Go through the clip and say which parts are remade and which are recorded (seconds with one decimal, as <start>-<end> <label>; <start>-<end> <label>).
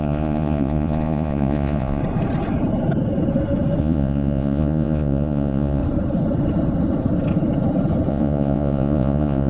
0.0-2.0 remade; 2.0-3.8 recorded; 3.8-5.8 remade; 5.8-8.1 recorded; 8.1-9.5 remade